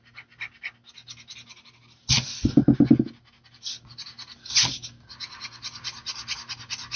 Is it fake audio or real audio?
real